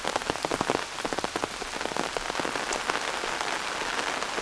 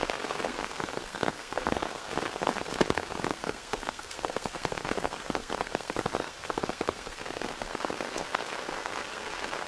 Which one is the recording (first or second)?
first